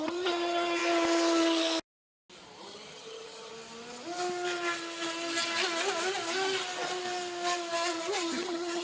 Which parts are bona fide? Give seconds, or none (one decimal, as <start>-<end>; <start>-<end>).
0.8-2.6; 3.5-8.1